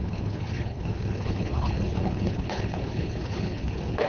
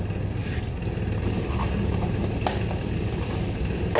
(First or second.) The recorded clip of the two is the second